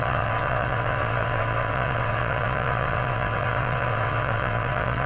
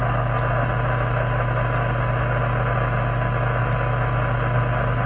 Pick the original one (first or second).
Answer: second